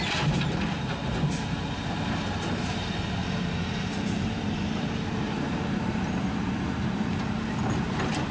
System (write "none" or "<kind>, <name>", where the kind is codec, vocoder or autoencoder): vocoder, BigVGAN v2